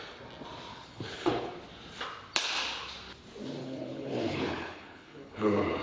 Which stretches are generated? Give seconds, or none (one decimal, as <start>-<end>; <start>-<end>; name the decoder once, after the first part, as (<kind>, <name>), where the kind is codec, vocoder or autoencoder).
0.7-1.5 (codec, HILCodec); 3.6-5.8